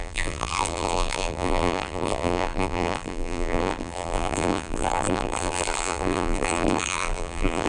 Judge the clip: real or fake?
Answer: fake